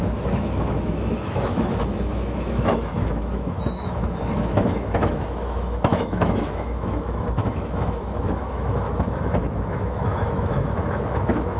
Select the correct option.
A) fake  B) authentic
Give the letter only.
A